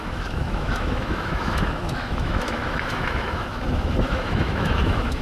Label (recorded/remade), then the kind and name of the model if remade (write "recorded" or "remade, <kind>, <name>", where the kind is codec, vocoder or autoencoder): remade, autoencoder, DAC-VAE